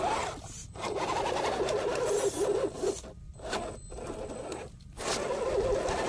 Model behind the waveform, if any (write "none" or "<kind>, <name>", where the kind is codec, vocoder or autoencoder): none